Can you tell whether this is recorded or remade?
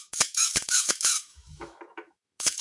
remade